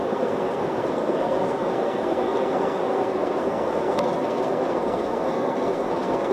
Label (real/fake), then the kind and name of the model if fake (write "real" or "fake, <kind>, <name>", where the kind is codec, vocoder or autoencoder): fake, codec, SNAC